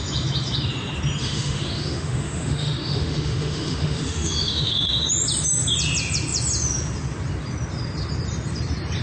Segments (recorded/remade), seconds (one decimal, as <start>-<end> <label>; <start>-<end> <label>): 0.0-1.2 recorded; 1.2-5.1 remade; 5.1-9.0 recorded